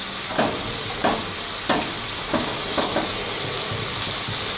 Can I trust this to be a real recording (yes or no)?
yes